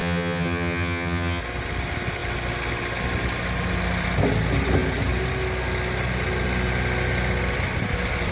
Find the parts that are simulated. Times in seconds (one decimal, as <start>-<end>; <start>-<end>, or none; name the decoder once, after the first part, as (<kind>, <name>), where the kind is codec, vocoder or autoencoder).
0.0-1.4 (vocoder, HiFi-GAN)